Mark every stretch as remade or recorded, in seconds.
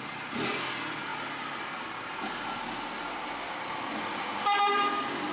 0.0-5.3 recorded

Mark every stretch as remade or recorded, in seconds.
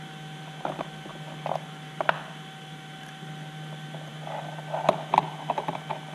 0.0-6.1 recorded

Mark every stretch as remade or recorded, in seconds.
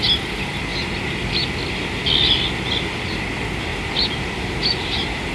0.0-5.3 recorded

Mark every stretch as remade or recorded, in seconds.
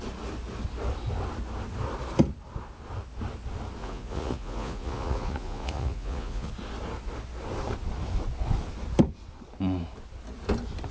0.0-3.8 recorded; 3.8-6.5 remade; 6.5-10.9 recorded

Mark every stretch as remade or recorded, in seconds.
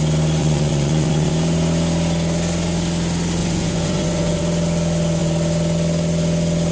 0.0-0.4 recorded; 0.4-1.3 remade; 1.3-3.4 recorded; 3.4-4.4 remade; 4.4-6.7 recorded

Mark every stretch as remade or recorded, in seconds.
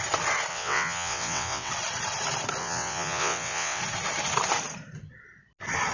0.0-0.5 recorded; 0.5-1.7 remade; 1.7-2.6 recorded; 2.6-3.8 remade; 3.8-5.9 recorded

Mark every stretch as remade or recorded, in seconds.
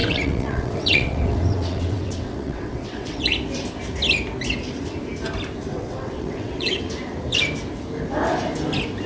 0.0-3.2 remade; 3.2-5.7 recorded; 5.7-6.8 remade; 6.8-9.1 recorded